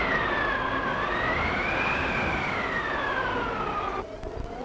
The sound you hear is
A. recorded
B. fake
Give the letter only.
A